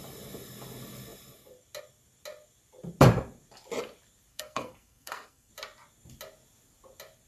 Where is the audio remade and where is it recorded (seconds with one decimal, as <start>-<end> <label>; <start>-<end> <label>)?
0.0-4.3 recorded; 4.3-5.5 remade; 5.5-7.3 recorded